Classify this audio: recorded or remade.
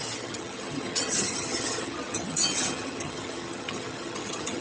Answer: remade